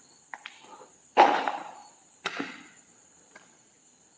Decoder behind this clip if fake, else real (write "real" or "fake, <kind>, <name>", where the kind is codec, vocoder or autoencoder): real